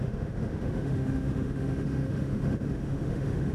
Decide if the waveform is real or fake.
fake